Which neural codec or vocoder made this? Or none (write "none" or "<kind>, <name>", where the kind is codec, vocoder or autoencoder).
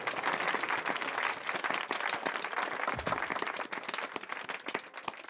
none